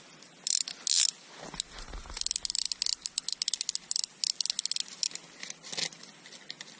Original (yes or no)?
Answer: yes